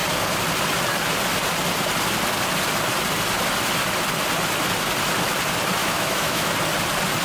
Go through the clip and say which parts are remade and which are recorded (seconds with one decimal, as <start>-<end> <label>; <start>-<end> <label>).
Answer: 0.0-5.8 recorded; 5.8-6.5 remade; 6.5-7.2 recorded